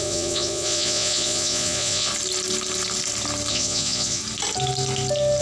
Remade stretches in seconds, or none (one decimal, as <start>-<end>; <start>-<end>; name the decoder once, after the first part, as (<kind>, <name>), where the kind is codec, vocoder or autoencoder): 0.0-2.1 (vocoder, Vocos); 3.5-4.2